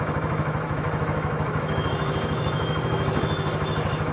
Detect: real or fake fake